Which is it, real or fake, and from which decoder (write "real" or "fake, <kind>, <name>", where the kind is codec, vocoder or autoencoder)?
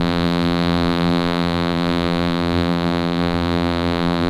fake, vocoder, BigVGAN v2